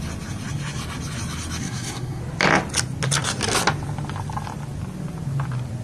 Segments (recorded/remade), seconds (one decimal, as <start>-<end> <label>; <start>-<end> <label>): 0.0-1.6 recorded; 1.6-2.2 remade; 2.2-5.8 recorded